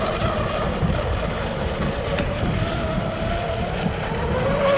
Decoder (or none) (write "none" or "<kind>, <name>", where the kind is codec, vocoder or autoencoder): none